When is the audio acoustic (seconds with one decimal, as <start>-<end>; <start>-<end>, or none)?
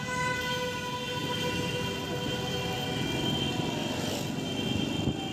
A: 0.0-5.3